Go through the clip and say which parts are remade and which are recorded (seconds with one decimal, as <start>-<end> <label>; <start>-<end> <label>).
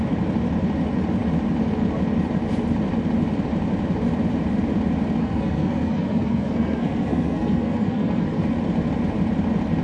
0.0-5.2 recorded; 5.2-8.5 remade; 8.5-9.8 recorded